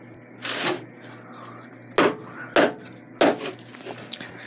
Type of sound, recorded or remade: recorded